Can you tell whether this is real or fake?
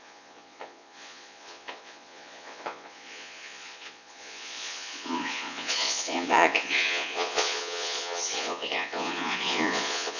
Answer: fake